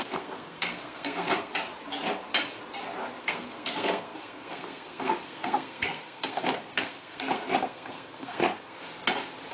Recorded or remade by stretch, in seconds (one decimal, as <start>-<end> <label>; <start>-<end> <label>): 0.0-1.5 remade; 1.5-3.2 recorded; 3.2-8.8 remade; 8.8-9.5 recorded